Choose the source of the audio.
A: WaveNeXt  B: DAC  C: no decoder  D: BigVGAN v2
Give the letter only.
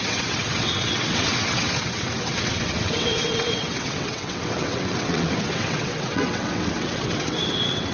A